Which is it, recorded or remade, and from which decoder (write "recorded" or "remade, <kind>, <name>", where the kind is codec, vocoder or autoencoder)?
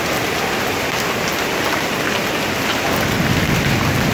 recorded